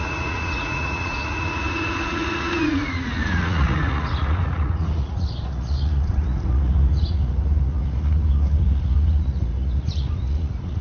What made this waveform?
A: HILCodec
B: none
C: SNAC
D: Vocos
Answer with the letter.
D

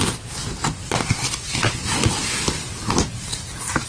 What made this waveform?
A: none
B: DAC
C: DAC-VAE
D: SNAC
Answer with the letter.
A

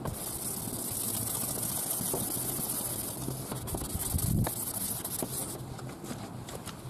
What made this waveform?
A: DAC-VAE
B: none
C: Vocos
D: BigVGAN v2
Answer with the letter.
B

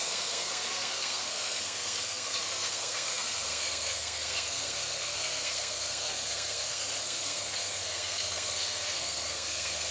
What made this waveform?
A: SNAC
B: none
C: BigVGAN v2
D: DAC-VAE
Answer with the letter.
A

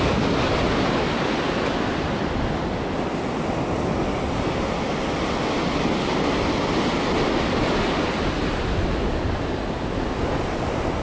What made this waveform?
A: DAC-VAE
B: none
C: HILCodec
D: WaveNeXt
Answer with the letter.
B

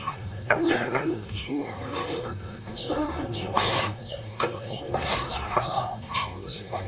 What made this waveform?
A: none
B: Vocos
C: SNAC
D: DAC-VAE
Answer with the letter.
C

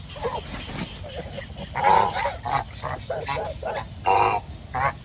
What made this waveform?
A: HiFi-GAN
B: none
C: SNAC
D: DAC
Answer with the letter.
B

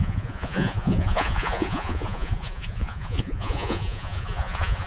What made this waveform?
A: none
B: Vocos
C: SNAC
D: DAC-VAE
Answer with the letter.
B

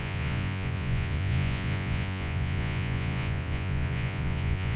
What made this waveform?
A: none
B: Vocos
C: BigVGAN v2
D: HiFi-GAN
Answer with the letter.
B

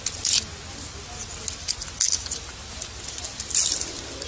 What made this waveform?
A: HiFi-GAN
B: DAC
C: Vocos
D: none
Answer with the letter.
D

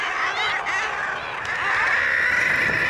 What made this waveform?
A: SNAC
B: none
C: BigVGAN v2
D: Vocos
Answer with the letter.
B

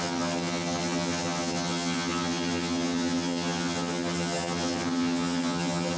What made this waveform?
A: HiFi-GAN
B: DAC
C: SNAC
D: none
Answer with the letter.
A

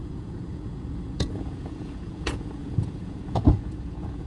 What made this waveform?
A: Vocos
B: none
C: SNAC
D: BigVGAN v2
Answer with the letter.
A